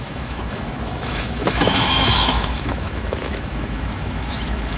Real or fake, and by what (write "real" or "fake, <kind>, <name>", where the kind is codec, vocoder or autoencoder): fake, autoencoder, DAC-VAE